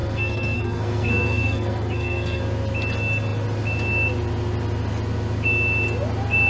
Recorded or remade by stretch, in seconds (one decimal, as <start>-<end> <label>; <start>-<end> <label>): 0.0-2.4 remade; 2.4-6.5 recorded